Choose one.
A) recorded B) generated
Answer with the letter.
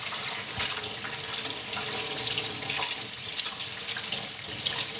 A